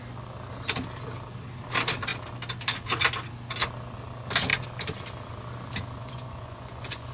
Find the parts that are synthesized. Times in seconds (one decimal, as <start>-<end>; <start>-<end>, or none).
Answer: 6.0-7.1